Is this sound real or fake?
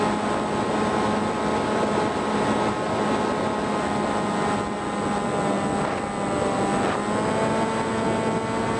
real